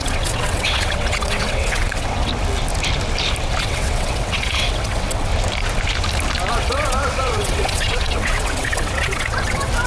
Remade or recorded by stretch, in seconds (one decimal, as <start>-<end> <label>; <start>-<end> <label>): 0.0-2.3 remade; 2.3-3.6 recorded; 3.6-5.3 remade; 5.3-6.5 recorded; 6.5-9.9 remade